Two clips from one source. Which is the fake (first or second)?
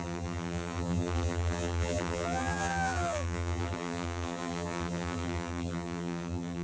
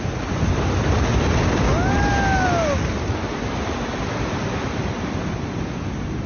first